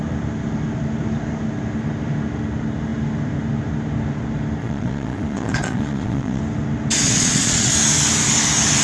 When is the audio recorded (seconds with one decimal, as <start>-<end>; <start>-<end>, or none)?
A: 0.0-4.6; 6.4-7.0; 7.7-8.8